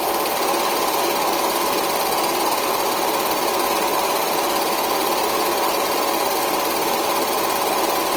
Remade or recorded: remade